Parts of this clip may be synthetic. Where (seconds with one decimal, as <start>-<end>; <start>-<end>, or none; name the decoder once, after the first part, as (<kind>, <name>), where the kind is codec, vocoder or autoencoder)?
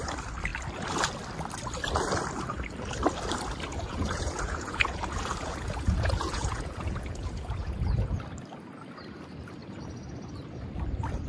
3.7-8.2 (vocoder, Vocos)